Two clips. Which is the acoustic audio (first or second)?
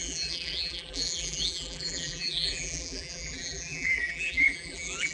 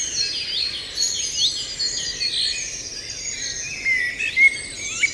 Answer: second